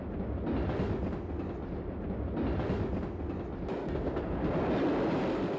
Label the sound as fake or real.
real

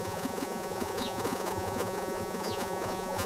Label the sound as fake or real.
fake